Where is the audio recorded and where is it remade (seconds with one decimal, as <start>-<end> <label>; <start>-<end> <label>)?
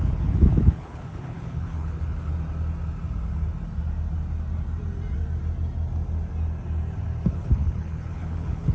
0.0-2.3 remade; 2.3-7.3 recorded; 7.3-8.7 remade